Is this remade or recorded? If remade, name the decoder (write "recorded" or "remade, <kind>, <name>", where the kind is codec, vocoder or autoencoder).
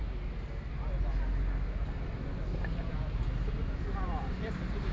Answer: recorded